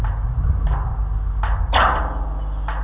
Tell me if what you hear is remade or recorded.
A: recorded